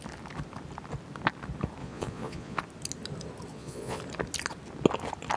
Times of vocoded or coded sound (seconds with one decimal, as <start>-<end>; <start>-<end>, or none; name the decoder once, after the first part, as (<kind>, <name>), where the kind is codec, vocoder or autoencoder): 1.8-2.6 (vocoder, Vocos); 3.5-4.0